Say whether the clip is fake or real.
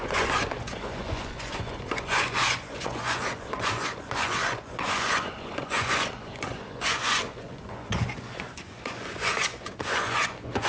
fake